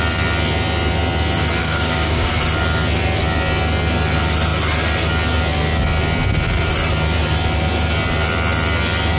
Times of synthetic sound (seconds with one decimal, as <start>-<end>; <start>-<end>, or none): 1.6-2.3